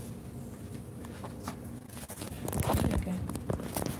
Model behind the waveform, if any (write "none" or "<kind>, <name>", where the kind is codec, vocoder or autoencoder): none